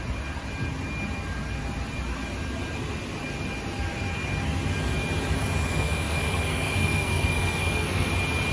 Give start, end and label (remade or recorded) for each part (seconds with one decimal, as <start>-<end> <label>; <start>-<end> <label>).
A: 0.0-5.7 recorded; 5.7-8.1 remade; 8.1-8.5 recorded